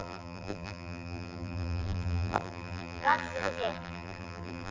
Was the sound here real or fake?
fake